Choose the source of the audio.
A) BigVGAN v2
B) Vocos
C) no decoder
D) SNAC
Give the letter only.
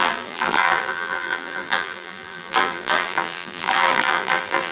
A